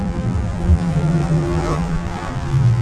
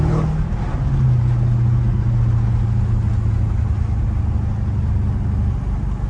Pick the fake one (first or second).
first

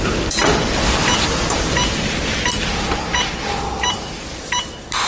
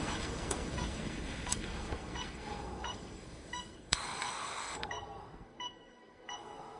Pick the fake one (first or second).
second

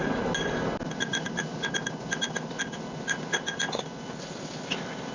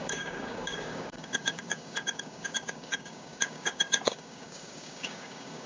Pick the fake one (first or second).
second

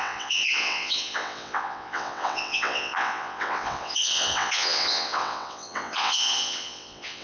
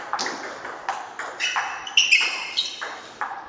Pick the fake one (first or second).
first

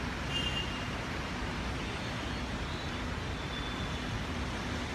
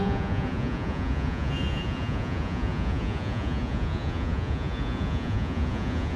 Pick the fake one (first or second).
second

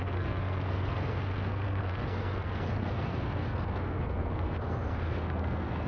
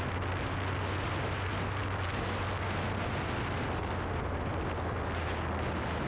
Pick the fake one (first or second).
first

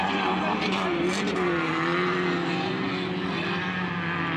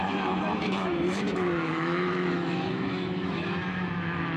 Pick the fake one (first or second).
second